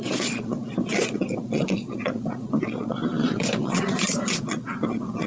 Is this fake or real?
fake